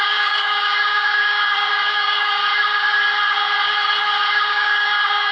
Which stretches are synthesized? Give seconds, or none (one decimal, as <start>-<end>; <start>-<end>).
0.0-2.4; 4.5-5.3